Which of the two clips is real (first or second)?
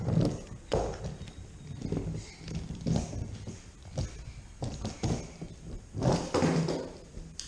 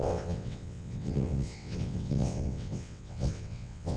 first